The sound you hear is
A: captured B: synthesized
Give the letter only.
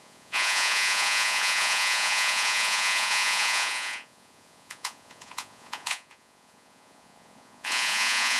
B